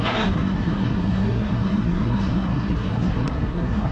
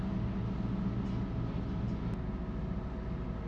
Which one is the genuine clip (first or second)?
second